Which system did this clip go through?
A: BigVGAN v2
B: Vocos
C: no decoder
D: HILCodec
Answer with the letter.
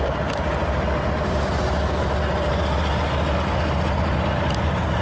C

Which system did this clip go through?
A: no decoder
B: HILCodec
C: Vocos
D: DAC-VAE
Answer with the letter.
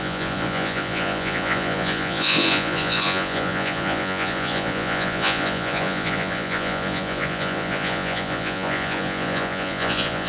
C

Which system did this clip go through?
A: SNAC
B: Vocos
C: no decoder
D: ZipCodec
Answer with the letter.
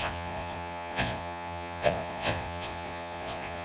B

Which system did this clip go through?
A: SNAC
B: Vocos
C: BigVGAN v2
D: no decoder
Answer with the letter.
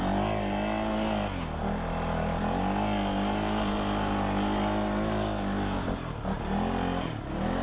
D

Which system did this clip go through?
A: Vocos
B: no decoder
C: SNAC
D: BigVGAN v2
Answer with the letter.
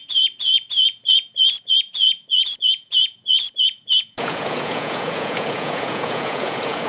A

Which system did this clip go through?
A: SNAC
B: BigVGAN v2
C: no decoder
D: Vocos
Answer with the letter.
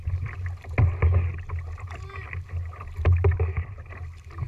C